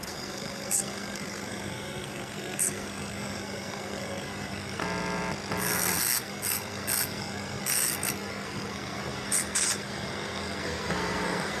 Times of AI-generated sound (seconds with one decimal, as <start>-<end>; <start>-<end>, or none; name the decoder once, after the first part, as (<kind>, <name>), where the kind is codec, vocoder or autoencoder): 0.0-4.8 (codec, SNAC); 5.6-11.6